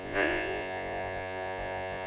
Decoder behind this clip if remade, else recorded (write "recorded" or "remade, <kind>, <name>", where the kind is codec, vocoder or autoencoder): remade, vocoder, Vocos